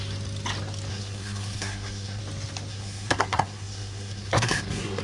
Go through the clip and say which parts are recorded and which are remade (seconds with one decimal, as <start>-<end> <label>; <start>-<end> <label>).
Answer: 0.0-0.9 recorded; 0.9-2.2 remade; 2.2-2.7 recorded; 2.7-5.0 remade